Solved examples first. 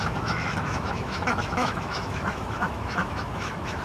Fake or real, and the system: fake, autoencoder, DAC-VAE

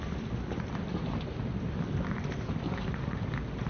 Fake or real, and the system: real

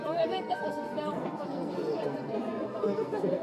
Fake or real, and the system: fake, codec, SNAC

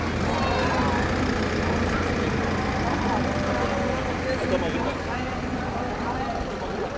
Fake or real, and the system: real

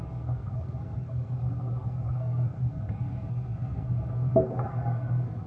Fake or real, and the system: fake, codec, SNAC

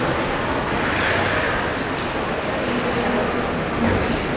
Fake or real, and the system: real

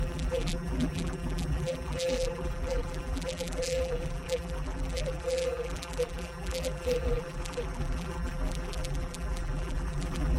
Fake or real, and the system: fake, vocoder, BigVGAN v2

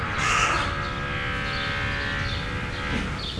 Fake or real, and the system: real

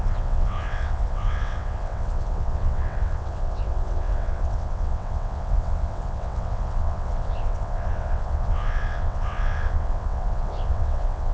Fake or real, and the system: fake, vocoder, WaveNeXt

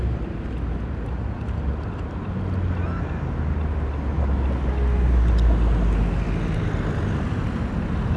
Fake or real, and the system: real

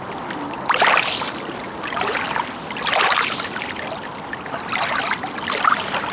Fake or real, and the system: real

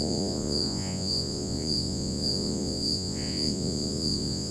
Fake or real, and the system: fake, vocoder, Vocos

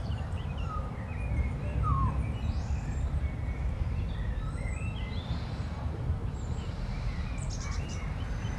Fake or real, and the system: fake, vocoder, BigVGAN v2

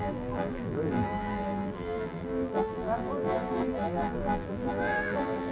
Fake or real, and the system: fake, vocoder, BigVGAN v2